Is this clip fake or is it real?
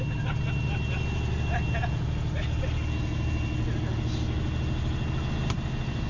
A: real